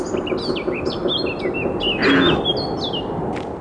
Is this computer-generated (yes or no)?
no